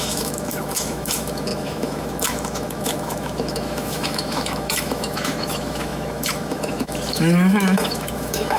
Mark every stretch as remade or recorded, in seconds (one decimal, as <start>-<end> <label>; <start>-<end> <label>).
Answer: 0.0-8.6 remade